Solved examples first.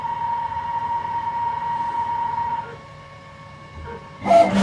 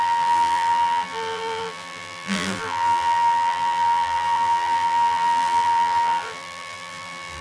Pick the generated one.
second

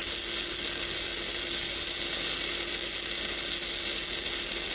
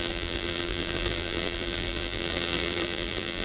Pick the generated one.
second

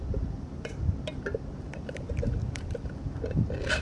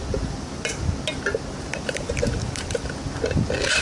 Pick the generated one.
first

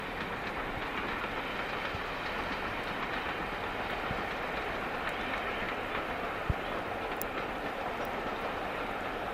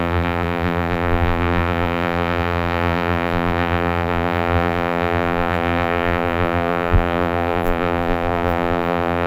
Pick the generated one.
second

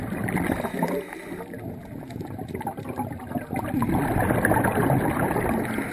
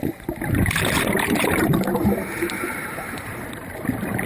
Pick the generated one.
second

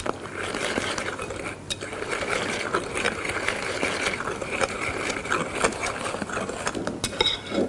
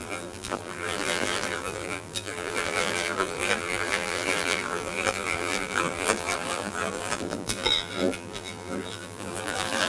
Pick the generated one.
second